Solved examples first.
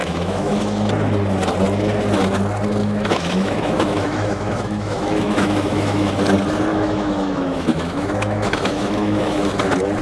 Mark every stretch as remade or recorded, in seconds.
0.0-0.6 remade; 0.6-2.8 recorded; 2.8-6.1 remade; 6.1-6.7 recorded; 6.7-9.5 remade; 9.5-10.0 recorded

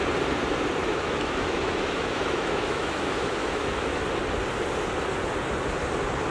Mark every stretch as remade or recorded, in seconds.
0.0-0.8 recorded; 0.8-4.0 remade; 4.0-6.3 recorded